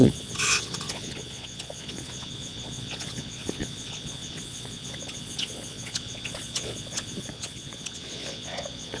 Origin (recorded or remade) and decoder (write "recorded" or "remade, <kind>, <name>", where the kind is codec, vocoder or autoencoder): remade, vocoder, Vocos